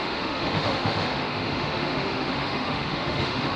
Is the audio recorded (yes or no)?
no